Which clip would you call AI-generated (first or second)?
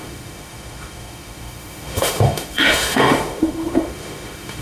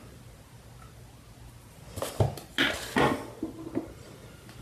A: first